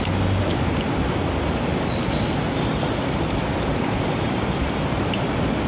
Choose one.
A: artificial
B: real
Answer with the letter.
B